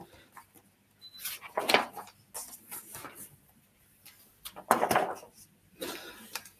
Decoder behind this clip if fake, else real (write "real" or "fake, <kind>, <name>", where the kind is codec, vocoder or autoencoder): real